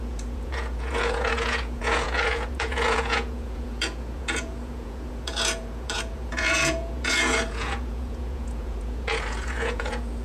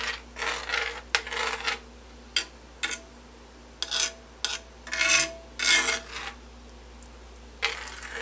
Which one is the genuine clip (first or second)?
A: second